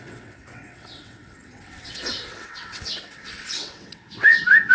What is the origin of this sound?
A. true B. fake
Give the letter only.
B